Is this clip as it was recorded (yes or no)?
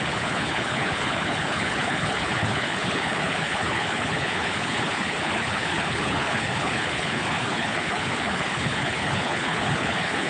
no